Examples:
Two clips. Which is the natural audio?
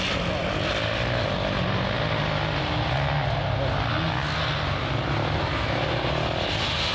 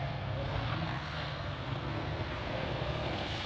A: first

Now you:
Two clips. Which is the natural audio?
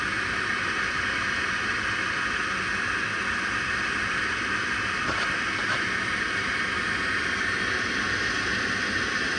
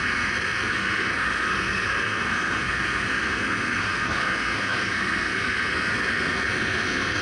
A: first